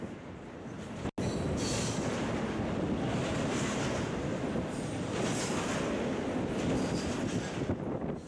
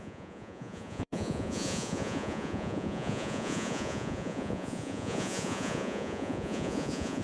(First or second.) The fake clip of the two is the second